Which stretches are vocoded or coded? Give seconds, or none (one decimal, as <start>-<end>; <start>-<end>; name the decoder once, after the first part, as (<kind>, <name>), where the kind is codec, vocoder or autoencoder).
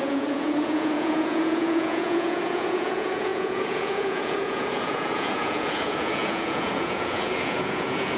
0.0-8.2 (vocoder, Vocos)